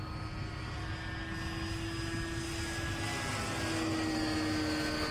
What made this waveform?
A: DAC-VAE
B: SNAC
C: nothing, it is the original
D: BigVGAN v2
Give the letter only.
C